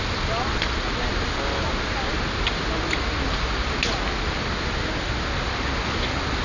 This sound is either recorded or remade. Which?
recorded